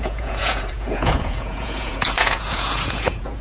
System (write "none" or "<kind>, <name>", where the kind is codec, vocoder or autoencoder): vocoder, Vocos